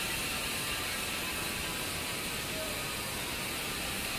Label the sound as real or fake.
real